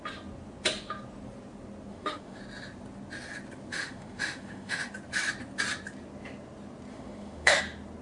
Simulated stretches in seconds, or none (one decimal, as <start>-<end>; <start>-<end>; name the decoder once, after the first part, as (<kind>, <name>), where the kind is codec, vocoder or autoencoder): 1.9-2.4 (autoencoder, DAC-VAE); 3.7-4.9; 6.9-7.6